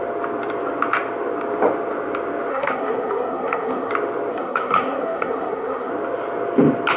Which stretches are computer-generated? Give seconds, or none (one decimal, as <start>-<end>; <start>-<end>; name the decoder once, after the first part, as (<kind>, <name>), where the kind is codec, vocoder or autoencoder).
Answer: 2.5-3.9 (codec, SNAC); 4.3-5.9